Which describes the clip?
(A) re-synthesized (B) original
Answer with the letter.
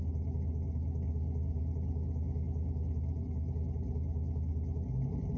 B